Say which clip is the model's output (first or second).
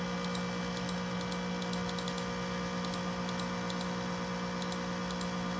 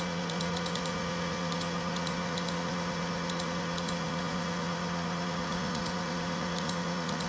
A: second